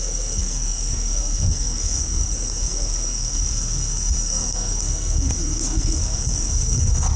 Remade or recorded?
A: remade